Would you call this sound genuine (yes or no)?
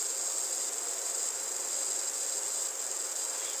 yes